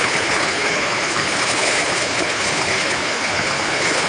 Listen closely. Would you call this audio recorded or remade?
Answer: remade